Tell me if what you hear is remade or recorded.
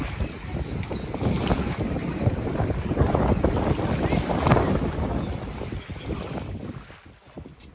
recorded